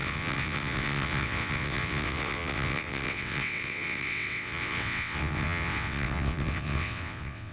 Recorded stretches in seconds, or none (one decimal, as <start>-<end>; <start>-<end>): none